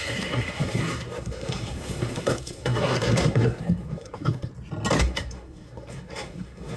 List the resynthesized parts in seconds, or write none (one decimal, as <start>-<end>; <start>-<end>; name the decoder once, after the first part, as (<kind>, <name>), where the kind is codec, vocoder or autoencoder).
0.0-4.5 (codec, SNAC); 5.0-6.8

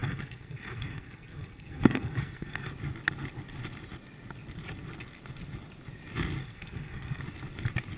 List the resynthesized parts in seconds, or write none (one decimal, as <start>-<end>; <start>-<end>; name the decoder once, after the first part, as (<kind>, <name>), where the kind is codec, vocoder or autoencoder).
0.0-2.7 (codec, SNAC); 6.4-7.2